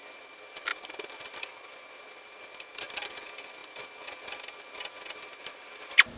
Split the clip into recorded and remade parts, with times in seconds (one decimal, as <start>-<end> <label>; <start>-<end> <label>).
0.0-6.2 remade